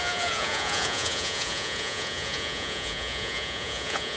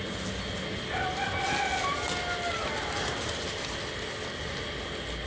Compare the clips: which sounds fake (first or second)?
first